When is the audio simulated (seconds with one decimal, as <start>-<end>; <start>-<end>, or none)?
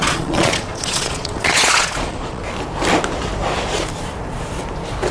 0.0-2.4